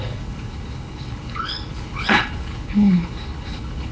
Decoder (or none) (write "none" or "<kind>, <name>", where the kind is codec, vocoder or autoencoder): codec, HILCodec